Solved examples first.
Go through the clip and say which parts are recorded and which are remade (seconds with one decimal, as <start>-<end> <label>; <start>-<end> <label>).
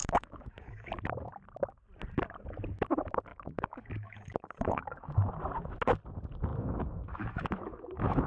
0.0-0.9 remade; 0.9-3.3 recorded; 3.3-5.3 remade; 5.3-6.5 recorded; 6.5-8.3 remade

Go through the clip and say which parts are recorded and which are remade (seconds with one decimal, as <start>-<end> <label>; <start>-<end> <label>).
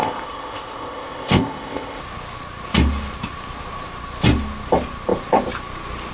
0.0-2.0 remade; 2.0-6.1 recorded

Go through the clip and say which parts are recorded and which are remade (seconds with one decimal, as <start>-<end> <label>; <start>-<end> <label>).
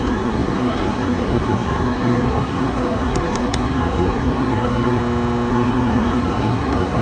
0.0-5.0 remade; 5.0-5.5 recorded; 5.5-7.0 remade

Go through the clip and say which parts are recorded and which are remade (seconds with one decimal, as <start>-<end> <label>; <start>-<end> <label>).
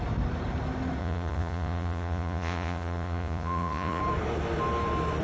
0.0-1.0 recorded; 1.0-4.0 remade; 4.0-5.2 recorded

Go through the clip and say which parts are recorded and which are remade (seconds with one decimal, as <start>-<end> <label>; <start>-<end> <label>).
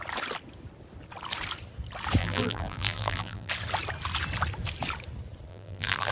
0.0-2.2 recorded; 2.2-3.5 remade; 3.5-5.5 recorded; 5.5-6.1 remade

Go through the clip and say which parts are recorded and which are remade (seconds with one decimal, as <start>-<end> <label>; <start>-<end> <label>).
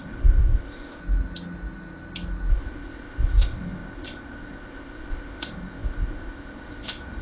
0.0-1.0 remade; 1.0-2.5 recorded; 2.5-7.2 remade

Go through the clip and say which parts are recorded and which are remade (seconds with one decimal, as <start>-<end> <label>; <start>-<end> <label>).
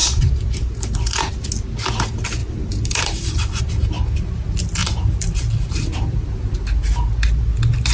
0.0-1.3 remade; 1.3-2.4 recorded; 2.4-3.6 remade; 3.6-4.8 recorded; 4.8-6.0 remade; 6.0-7.9 recorded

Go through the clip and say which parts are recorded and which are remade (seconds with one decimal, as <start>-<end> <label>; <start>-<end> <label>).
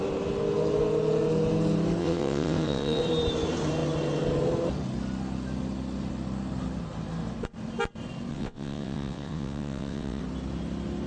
0.0-2.0 recorded; 2.0-3.0 remade; 3.0-8.3 recorded; 8.3-10.2 remade; 10.2-11.1 recorded